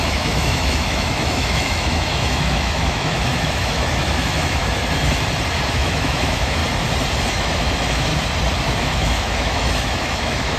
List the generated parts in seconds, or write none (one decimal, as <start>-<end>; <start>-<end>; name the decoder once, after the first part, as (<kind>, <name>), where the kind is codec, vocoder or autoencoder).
0.0-4.6 (autoencoder, DAC-VAE); 5.7-6.6; 7.3-8.1; 8.8-10.6